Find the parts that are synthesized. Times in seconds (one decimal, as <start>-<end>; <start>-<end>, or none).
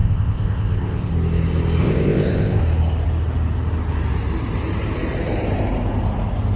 0.0-1.1; 1.8-2.6